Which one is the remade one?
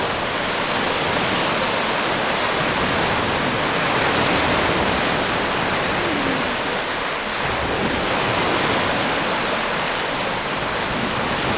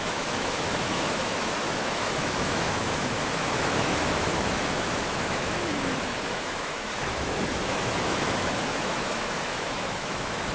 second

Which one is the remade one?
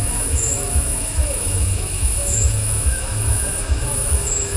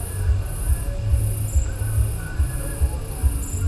first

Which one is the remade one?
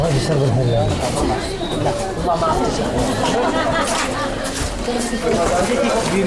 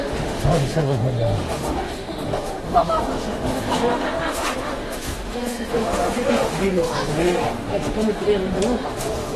second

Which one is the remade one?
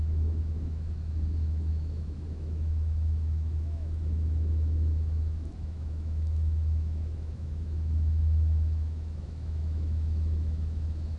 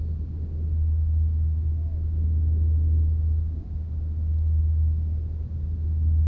first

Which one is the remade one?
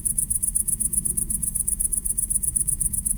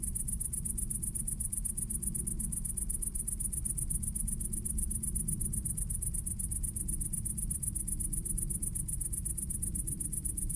first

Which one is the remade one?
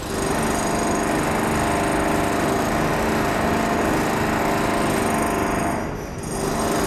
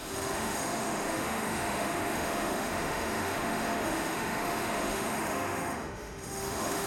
second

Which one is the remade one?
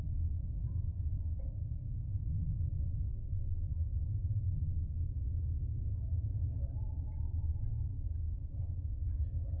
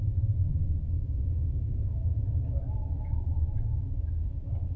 second